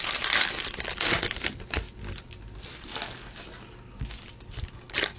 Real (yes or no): yes